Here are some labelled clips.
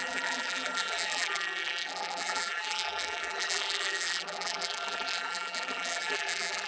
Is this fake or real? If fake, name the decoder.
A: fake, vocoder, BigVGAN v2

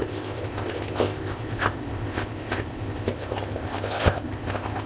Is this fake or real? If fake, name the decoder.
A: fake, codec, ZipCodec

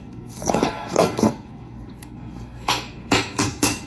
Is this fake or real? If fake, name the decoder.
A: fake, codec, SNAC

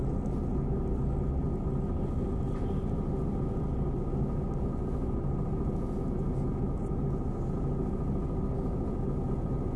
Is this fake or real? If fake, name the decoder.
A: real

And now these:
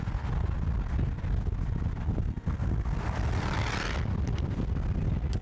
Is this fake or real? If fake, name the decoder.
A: real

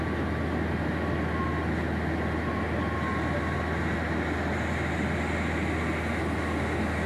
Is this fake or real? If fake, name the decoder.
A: real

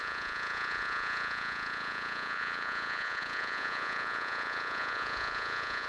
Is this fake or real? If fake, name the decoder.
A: fake, vocoder, Vocos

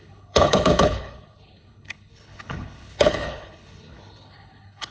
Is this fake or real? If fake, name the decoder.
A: fake, codec, HILCodec